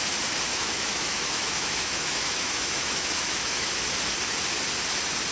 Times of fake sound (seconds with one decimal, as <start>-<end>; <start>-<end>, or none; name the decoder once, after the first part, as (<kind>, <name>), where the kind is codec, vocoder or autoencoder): 0.5-3.7 (autoencoder, DAC-VAE)